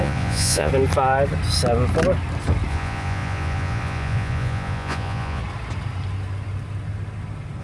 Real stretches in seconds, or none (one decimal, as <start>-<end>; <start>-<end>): 0.7-2.7; 5.4-7.6